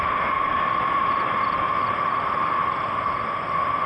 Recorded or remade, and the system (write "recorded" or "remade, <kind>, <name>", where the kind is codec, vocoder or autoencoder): recorded